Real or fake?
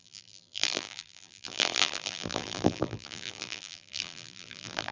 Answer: fake